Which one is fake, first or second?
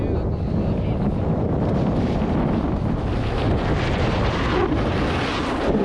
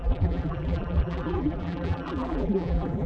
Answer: second